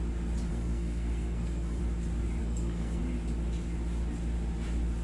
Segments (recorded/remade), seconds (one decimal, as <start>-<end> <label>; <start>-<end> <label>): 0.0-0.5 recorded; 0.5-1.8 remade; 1.8-2.4 recorded; 2.4-3.0 remade; 3.0-5.0 recorded